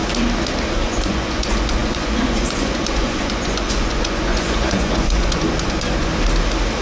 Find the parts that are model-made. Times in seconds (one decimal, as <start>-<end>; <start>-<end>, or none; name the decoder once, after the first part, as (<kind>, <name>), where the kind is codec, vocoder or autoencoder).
0.7-6.1 (vocoder, Vocos)